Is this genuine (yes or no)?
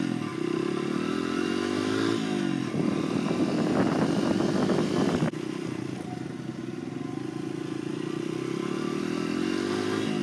yes